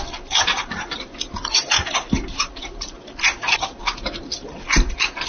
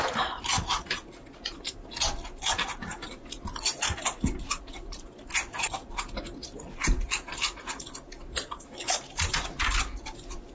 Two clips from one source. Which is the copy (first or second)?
first